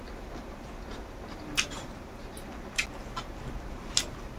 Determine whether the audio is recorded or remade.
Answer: recorded